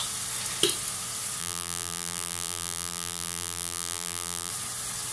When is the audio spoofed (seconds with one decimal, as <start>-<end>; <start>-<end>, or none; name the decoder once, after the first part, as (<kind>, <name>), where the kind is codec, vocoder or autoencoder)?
1.4-4.5 (vocoder, BigVGAN v2)